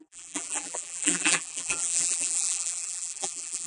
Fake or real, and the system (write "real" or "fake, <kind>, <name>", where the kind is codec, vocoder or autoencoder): fake, vocoder, BigVGAN v2